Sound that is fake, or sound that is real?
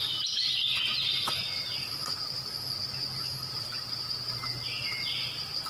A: real